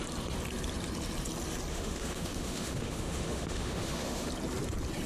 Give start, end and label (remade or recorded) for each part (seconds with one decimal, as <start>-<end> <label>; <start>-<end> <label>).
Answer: 0.0-1.7 recorded; 1.7-4.3 remade; 4.3-5.1 recorded